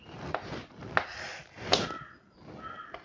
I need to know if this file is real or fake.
real